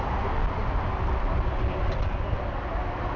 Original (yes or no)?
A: yes